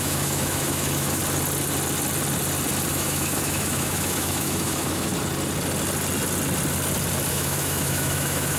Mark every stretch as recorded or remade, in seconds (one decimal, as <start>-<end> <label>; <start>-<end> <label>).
0.0-1.2 remade; 1.2-2.9 recorded; 2.9-5.1 remade; 5.1-7.3 recorded; 7.3-8.6 remade